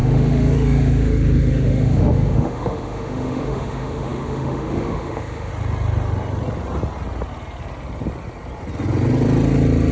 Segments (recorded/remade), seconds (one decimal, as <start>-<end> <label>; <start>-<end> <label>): 0.0-5.5 remade; 5.5-9.9 recorded